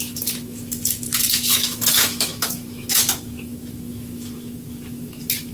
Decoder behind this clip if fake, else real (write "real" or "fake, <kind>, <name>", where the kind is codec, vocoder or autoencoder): fake, autoencoder, DAC-VAE